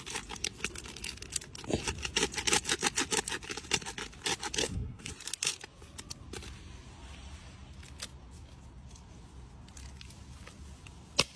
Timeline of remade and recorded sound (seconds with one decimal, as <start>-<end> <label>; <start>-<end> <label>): 0.0-4.6 recorded; 4.6-5.1 remade; 5.1-11.4 recorded